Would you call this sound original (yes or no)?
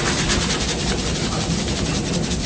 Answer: yes